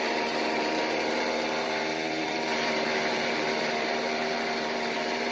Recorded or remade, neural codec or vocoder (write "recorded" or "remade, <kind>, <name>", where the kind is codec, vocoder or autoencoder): remade, vocoder, BigVGAN v2